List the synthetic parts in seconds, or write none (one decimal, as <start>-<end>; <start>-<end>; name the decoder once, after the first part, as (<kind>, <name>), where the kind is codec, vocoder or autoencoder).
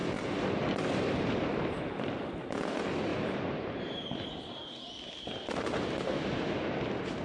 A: 0.0-1.8 (vocoder, BigVGAN v2); 3.1-6.5